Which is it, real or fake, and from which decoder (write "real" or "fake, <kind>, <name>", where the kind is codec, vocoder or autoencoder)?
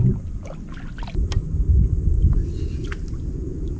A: real